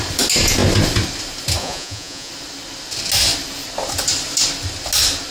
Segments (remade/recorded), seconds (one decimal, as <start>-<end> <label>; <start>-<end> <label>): 0.0-1.6 recorded; 1.6-2.3 remade; 2.3-5.3 recorded